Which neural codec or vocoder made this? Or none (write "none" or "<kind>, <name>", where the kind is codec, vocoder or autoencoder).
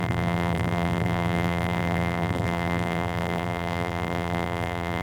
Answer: vocoder, BigVGAN v2